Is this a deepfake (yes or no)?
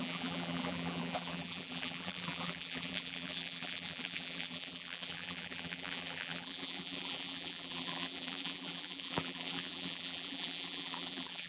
yes